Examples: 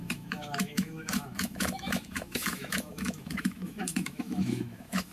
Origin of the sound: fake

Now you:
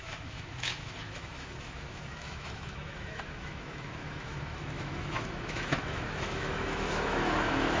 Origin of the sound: fake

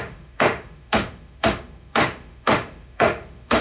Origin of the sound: fake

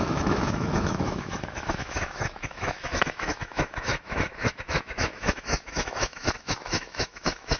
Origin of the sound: fake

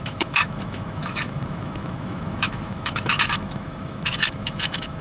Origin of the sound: fake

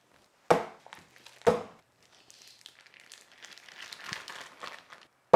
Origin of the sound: real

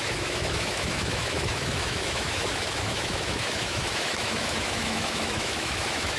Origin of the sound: fake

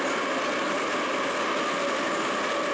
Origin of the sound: real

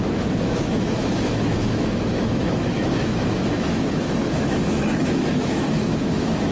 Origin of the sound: fake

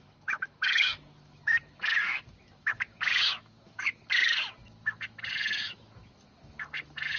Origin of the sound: fake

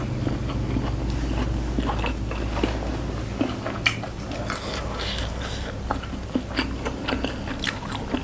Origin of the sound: real